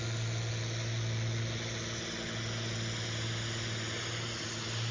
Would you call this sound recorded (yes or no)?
yes